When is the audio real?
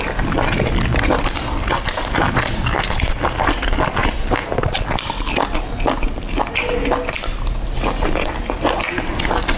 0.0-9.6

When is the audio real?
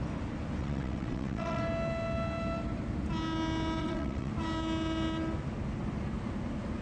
0.0-0.6; 1.6-3.8; 4.3-6.8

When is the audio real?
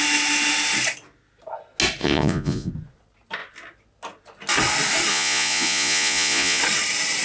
0.0-2.0; 2.7-5.1; 6.6-7.2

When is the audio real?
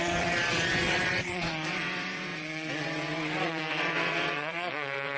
none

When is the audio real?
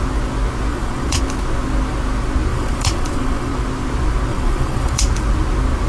0.0-0.7; 1.2-2.5; 3.6-4.3; 5.0-5.9